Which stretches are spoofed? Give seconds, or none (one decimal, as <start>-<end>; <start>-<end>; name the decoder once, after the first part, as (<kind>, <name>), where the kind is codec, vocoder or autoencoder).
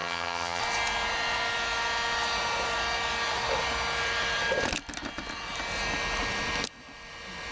0.0-0.6 (vocoder, HiFi-GAN)